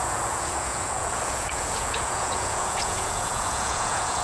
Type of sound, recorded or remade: remade